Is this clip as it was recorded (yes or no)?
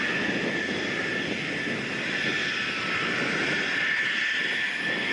yes